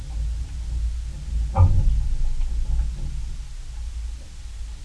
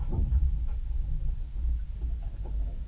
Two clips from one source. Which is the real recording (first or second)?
first